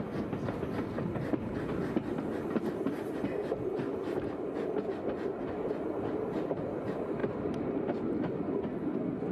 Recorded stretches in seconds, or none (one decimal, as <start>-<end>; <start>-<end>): 0.0-9.3